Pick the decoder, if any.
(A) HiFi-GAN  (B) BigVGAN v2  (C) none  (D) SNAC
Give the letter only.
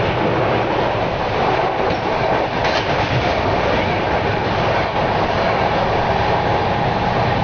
C